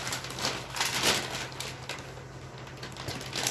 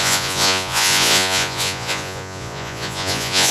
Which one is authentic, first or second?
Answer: first